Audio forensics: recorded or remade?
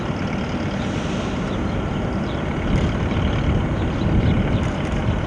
remade